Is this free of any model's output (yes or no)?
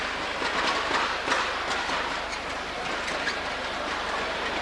yes